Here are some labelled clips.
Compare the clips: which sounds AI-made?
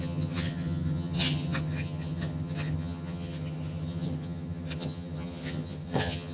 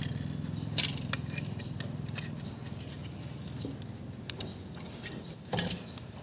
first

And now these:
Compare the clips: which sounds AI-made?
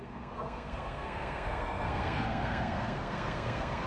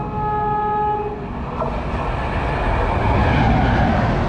first